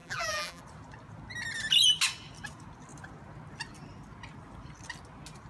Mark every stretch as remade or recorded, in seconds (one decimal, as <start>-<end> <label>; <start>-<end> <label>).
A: 0.0-0.6 remade; 0.6-5.5 recorded